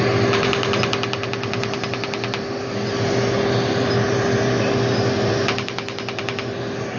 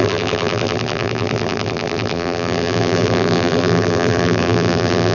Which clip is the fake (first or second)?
second